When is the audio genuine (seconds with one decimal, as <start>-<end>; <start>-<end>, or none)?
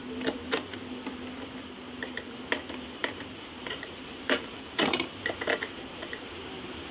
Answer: 0.0-3.0; 5.2-6.9